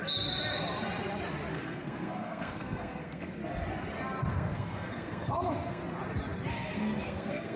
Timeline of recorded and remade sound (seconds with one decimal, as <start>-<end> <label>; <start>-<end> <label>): 0.0-1.5 recorded; 1.5-3.4 remade; 3.4-4.3 recorded; 4.3-5.8 remade; 5.8-6.5 recorded; 6.5-7.6 remade